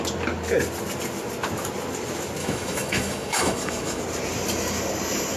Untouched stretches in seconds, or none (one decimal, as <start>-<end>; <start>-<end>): 0.0-2.4; 4.0-5.4